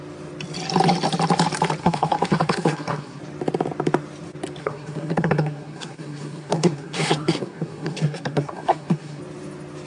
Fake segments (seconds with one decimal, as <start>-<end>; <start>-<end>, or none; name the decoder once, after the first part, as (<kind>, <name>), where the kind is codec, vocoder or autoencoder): 1.8-3.2 (codec, SNAC); 4.6-9.2